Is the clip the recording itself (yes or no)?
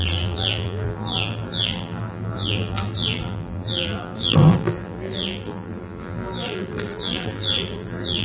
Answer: no